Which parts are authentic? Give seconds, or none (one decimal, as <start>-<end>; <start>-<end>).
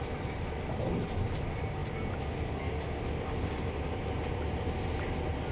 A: 0.0-5.5